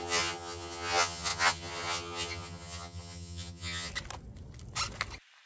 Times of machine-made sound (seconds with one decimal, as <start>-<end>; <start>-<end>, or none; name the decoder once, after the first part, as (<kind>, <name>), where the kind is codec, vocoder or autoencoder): 0.0-3.9 (vocoder, HiFi-GAN)